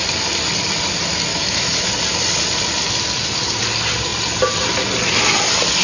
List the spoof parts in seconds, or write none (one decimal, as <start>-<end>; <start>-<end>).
1.3-1.9